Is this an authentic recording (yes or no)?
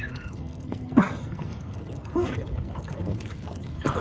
no